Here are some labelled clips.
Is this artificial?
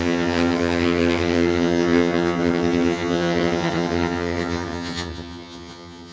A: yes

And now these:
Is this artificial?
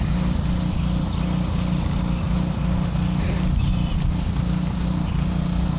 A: no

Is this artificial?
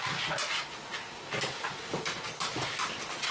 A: no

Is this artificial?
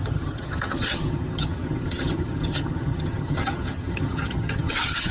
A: yes